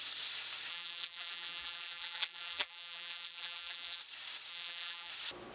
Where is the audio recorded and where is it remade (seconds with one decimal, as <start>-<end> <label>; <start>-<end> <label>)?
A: 0.0-0.7 recorded; 0.7-4.0 remade; 4.0-4.5 recorded; 4.5-5.1 remade; 5.1-5.5 recorded